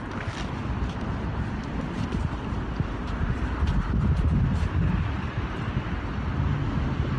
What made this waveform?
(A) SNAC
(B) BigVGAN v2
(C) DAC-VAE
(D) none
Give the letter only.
D